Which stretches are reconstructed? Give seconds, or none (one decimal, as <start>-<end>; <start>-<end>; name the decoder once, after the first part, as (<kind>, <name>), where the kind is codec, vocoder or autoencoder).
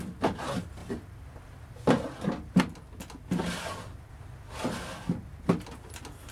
none